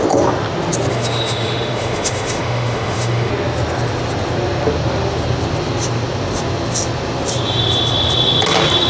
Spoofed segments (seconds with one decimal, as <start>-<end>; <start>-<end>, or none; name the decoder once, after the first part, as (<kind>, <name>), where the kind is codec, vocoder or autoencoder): 0.9-3.3 (autoencoder, DAC-VAE)